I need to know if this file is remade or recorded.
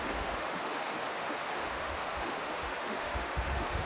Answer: remade